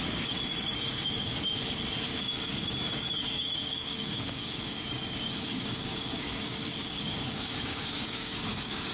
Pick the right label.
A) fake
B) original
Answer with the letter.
A